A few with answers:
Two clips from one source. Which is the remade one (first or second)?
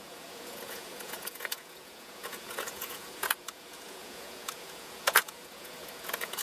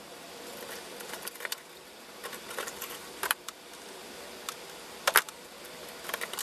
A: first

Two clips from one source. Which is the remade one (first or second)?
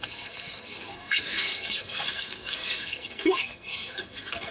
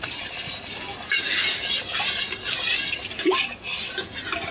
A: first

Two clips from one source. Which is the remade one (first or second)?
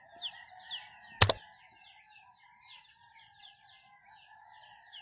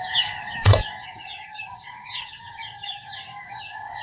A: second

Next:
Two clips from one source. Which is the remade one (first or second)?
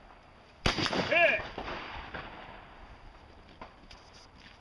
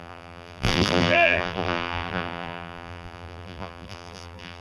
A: second